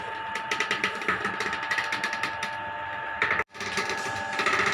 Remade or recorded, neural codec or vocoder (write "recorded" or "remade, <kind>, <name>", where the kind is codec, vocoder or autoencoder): recorded